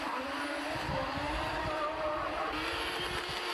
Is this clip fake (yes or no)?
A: no